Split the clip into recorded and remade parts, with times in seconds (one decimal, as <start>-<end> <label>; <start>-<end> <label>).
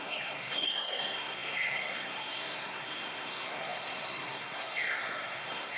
0.0-5.8 remade